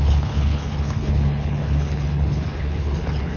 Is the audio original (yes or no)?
no